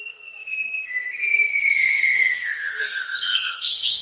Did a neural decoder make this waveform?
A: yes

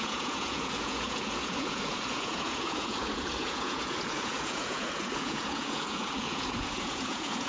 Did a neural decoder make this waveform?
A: yes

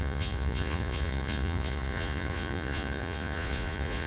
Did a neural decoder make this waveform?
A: yes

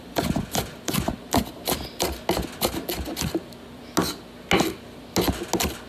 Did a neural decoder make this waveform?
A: no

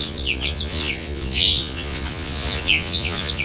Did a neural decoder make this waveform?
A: yes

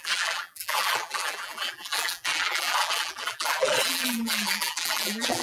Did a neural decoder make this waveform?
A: yes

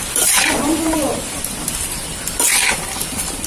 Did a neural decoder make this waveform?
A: yes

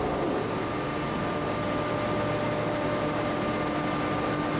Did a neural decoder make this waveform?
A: no